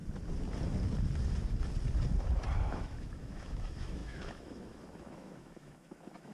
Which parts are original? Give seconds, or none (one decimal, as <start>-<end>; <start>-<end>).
0.0-2.7